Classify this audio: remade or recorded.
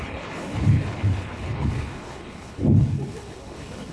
remade